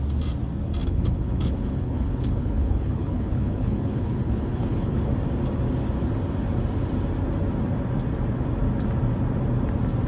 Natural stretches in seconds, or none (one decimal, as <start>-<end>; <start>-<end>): 0.0-0.8; 5.1-10.1